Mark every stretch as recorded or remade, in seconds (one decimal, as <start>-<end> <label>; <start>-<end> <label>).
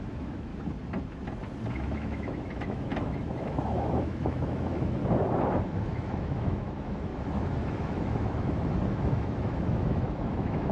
0.0-0.5 remade; 0.5-1.7 recorded; 1.7-5.0 remade; 5.0-5.6 recorded; 5.6-10.7 remade